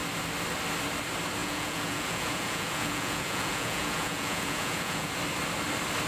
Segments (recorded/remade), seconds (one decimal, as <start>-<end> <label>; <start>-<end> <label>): 0.0-1.4 recorded; 1.4-5.1 remade; 5.1-6.1 recorded